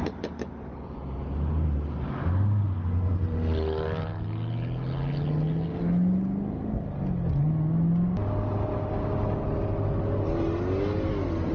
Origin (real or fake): real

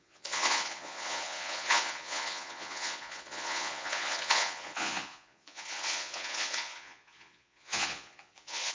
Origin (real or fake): fake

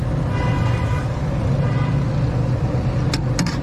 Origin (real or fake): real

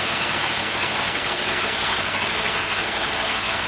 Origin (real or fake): fake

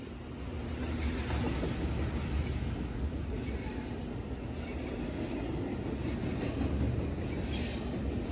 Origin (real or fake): real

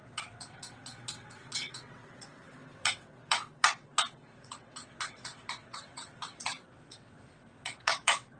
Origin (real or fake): fake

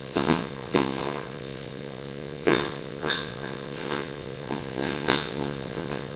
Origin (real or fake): fake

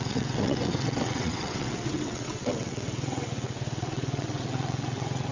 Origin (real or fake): fake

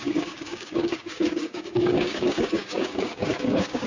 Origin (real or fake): fake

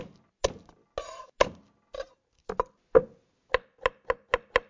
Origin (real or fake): real